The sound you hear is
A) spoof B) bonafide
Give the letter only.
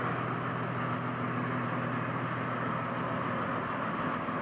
B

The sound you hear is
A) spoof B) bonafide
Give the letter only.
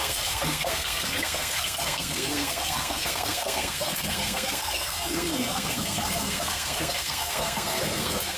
A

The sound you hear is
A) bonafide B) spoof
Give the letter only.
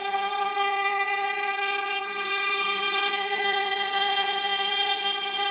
B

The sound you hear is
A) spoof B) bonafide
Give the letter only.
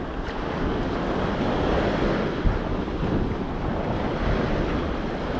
B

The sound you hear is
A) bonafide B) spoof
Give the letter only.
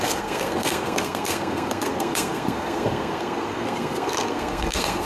B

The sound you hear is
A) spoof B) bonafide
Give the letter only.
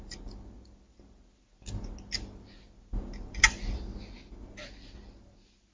B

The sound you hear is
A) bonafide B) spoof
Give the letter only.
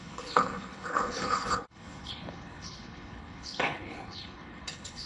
B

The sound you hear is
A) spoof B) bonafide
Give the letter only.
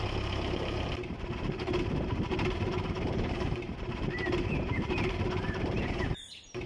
A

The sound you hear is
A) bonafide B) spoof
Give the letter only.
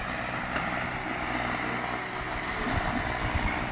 A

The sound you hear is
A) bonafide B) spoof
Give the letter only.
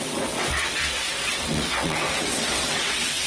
B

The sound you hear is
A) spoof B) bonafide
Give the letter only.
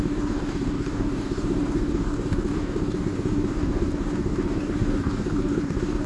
A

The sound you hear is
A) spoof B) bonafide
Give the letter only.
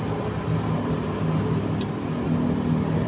B